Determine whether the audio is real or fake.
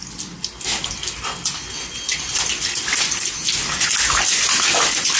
real